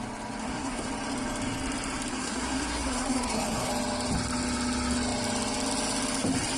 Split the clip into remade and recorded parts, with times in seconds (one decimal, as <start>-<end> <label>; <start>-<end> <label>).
0.0-0.4 recorded; 0.4-0.9 remade; 0.9-2.1 recorded; 2.1-3.7 remade; 3.7-6.6 recorded